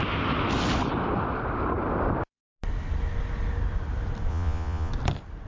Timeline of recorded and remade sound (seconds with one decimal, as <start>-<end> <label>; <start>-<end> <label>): 0.0-4.3 recorded; 4.3-4.9 remade; 4.9-5.5 recorded